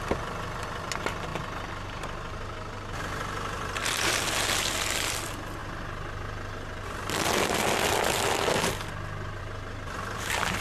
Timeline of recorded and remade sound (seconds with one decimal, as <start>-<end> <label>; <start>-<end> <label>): 0.0-1.3 remade; 1.3-3.0 recorded; 3.0-5.6 remade; 5.6-9.4 recorded; 9.4-10.6 remade